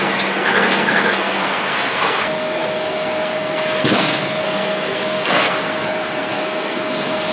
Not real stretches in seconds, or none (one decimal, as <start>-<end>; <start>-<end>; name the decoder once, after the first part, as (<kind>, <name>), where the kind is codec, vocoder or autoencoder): 0.0-7.3 (codec, SNAC)